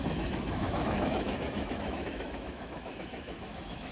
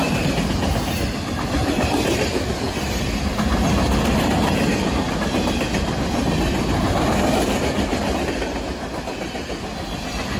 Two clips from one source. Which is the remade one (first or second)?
first